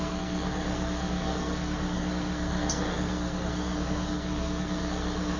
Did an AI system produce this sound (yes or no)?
yes